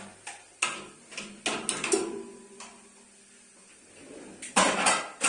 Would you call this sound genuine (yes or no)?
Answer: yes